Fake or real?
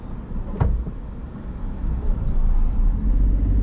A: real